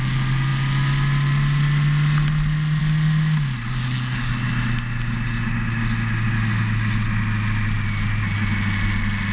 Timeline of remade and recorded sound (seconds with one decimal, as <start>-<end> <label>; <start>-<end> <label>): 0.0-3.7 recorded; 3.7-4.3 remade; 4.3-9.3 recorded